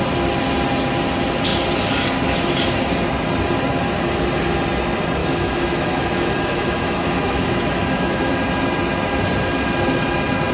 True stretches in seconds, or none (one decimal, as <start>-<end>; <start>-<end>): 0.0-5.2; 8.2-10.5